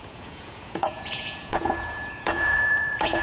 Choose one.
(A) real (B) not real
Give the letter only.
B